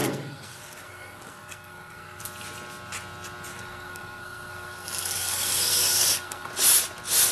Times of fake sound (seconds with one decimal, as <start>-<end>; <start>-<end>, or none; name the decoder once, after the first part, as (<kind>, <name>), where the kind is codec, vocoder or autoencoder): 0.0-2.2 (codec, SNAC); 3.5-6.5